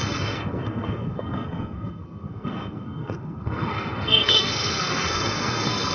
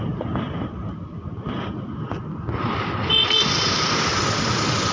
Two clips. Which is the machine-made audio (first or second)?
first